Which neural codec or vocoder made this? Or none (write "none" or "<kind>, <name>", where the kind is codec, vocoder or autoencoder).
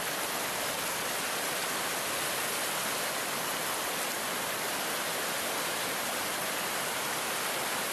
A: none